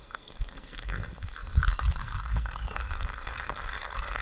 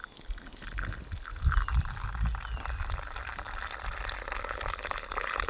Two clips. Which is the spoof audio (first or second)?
first